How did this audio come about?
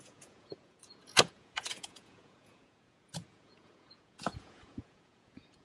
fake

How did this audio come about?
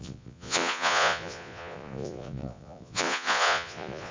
fake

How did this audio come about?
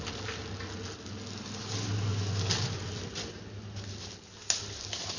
real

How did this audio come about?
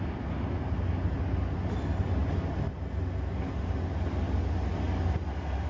real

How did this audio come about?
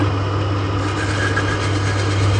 real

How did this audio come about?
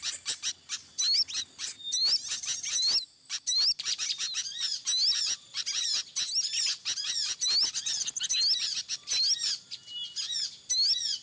real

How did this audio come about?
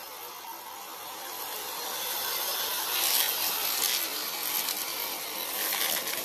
real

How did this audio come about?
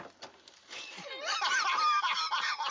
real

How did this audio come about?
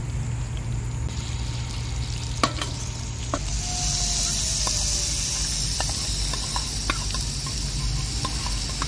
real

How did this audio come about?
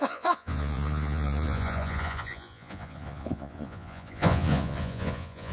fake